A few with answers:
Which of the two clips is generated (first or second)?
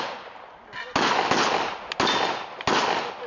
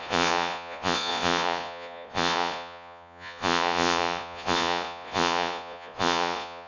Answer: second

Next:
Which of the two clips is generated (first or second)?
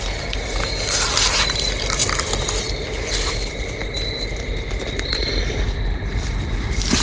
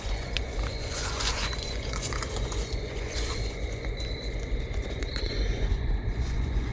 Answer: second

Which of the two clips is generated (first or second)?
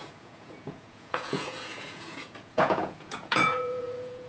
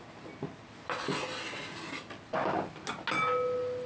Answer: first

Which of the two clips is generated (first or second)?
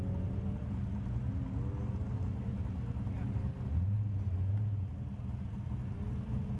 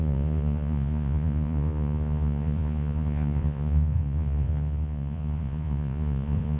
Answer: second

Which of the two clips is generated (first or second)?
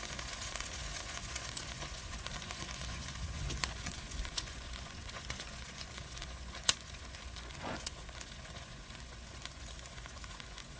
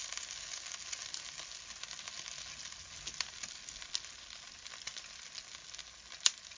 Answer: first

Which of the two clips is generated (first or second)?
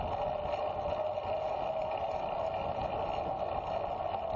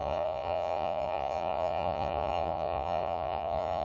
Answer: second